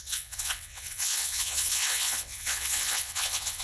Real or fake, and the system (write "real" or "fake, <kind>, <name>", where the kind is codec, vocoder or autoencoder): fake, vocoder, WaveNeXt